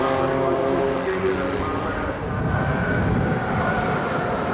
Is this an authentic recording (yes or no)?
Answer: yes